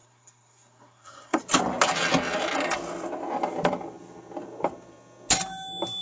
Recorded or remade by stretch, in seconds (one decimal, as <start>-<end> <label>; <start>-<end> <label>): 0.0-1.4 remade; 1.4-6.0 recorded